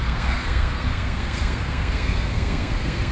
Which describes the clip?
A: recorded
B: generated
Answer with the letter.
B